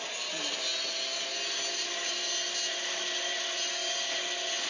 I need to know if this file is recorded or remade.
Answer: recorded